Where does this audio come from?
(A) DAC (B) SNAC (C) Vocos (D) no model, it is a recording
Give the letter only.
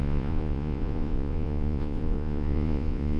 C